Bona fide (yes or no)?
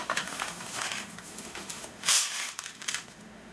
no